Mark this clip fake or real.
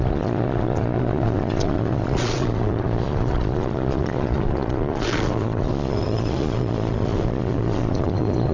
fake